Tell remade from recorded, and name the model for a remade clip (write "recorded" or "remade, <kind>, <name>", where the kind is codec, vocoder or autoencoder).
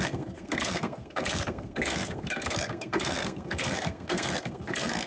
remade, codec, SNAC